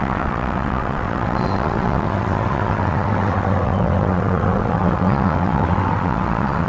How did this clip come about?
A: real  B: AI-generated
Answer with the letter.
B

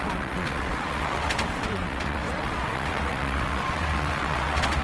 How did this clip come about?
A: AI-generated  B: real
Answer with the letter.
A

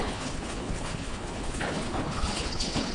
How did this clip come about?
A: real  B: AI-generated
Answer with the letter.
B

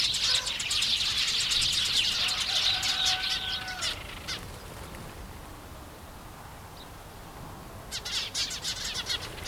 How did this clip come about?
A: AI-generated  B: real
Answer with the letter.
B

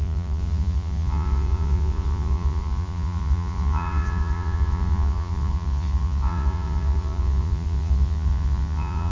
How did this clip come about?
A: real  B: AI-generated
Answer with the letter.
B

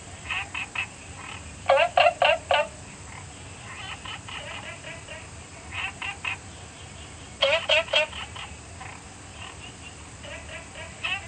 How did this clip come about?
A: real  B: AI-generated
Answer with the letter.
A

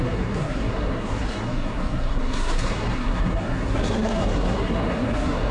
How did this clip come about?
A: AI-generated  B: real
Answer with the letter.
A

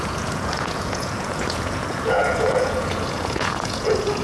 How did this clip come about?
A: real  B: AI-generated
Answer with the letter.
B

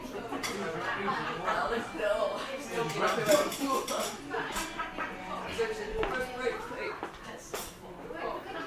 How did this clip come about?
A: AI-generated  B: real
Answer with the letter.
B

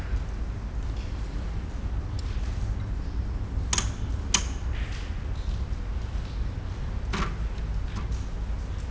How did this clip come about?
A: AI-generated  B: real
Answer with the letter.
B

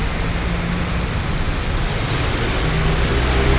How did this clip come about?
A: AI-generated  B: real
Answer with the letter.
B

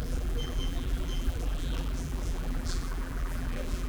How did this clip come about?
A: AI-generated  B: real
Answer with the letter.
A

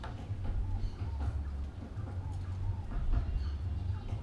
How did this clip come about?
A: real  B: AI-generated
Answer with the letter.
A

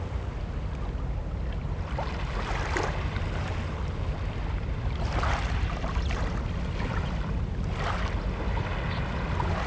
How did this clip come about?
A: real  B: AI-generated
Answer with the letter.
A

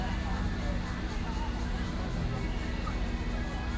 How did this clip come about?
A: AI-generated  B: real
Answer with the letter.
B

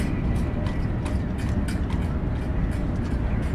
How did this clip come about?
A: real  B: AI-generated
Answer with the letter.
A